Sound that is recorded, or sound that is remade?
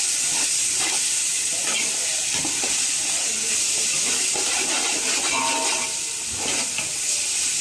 remade